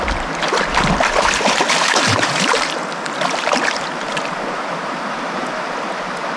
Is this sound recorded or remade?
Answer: recorded